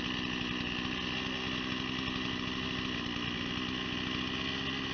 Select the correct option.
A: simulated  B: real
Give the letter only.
B